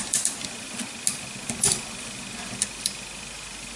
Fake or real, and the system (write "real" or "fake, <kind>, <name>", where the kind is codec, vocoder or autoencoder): real